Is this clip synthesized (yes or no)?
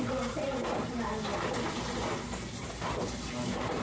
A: no